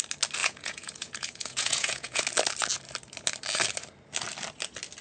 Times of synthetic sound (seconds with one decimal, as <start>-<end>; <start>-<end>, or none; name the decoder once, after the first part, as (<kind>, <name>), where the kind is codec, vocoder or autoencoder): 0.4-2.2 (vocoder, Vocos)